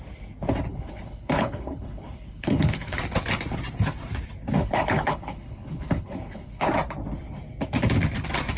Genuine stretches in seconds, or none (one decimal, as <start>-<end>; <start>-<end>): 0.0-0.7; 3.0-4.6; 6.7-8.6